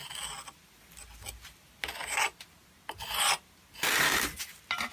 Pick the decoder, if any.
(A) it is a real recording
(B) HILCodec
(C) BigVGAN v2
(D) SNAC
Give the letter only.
A